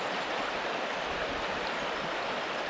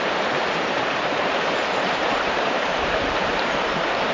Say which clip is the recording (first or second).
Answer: first